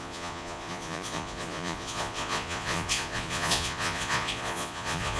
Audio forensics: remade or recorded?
remade